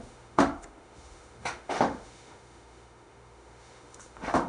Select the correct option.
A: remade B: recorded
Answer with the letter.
A